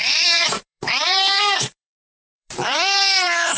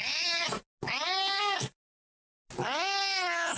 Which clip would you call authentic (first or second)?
second